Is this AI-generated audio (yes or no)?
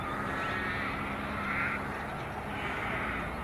yes